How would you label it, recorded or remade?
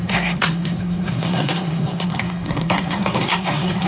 remade